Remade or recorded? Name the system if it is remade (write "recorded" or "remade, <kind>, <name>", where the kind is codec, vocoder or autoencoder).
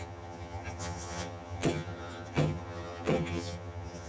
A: remade, vocoder, HiFi-GAN